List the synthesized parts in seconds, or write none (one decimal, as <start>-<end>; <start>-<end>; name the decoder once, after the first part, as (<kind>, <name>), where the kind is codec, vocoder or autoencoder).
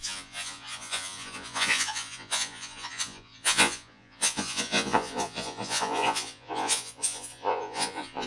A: 0.0-8.3 (vocoder, Vocos)